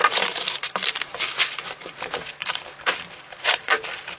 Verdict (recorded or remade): remade